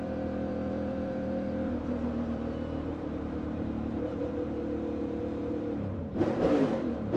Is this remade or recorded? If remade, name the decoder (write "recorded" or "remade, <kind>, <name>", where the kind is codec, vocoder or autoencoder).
remade, vocoder, BigVGAN v2